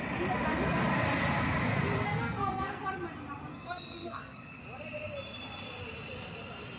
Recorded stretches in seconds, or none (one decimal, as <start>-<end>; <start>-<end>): 0.0-2.2; 2.8-3.5; 4.6-6.8